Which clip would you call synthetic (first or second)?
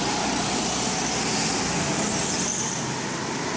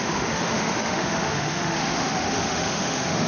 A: second